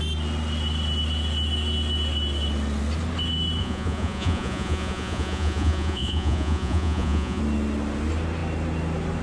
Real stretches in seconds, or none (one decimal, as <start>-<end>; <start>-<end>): 0.0-3.6; 7.4-9.2